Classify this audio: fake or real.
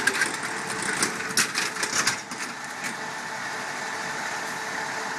real